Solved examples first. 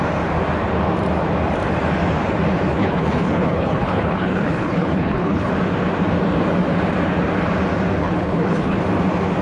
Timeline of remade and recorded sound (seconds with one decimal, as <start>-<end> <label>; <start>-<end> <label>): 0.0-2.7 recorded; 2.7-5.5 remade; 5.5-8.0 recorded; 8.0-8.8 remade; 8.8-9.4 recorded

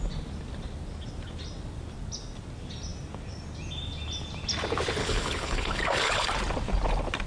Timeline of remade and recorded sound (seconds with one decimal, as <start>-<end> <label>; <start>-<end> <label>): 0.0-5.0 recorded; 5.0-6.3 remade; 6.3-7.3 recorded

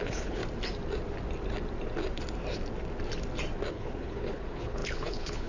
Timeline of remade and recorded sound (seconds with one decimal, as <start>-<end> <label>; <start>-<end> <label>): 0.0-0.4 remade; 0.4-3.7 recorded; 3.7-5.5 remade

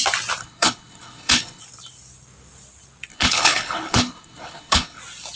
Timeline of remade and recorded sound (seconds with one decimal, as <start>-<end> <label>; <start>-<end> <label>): 0.0-0.4 recorded; 0.4-1.6 remade; 1.6-3.1 recorded; 3.1-5.0 remade; 5.0-5.4 recorded

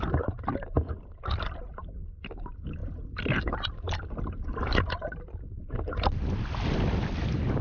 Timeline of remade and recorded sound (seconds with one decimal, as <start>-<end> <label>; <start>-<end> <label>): 0.0-7.6 recorded